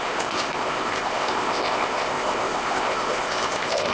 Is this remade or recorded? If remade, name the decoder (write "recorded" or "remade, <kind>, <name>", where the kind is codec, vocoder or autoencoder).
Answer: remade, codec, ZipCodec